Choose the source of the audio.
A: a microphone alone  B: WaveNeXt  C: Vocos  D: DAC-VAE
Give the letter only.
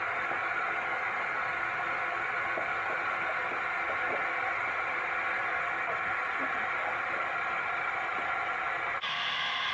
A